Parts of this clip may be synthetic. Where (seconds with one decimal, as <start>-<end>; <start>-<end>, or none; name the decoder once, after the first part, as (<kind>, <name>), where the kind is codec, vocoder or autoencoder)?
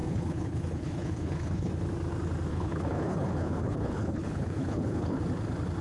0.0-1.7 (codec, HILCodec); 2.5-5.2